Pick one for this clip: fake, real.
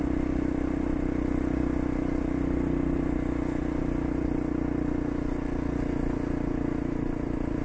real